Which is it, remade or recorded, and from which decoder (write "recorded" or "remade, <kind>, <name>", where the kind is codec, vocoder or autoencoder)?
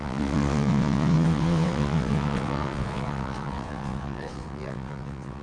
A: remade, vocoder, WaveNeXt